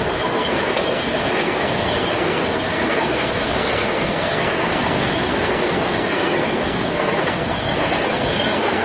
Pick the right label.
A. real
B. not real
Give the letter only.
B